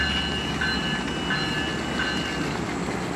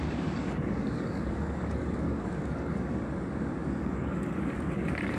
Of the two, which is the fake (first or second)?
second